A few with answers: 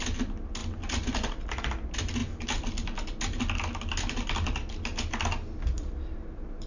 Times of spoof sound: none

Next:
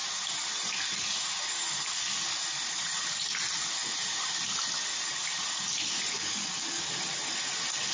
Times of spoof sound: 6.1-6.9 (codec, DAC)

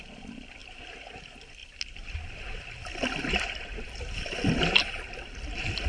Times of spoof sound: none

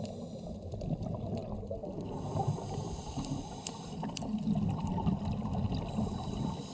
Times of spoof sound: none

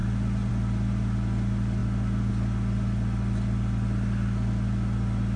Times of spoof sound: none

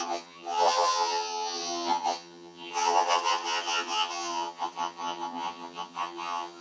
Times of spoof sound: 0.0-6.6 (vocoder, HiFi-GAN)

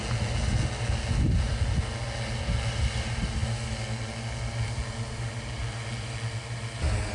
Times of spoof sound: none